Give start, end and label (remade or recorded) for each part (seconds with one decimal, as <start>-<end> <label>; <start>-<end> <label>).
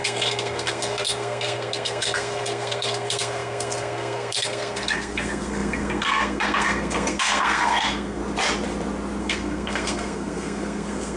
0.0-8.2 remade; 8.2-9.2 recorded; 9.2-11.2 remade